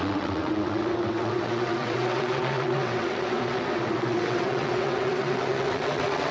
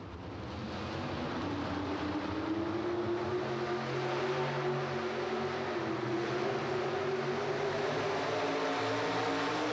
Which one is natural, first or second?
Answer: second